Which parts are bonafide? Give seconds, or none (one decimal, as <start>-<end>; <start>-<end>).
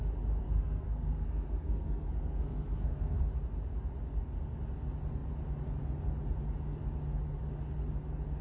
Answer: 0.0-0.4; 3.2-8.4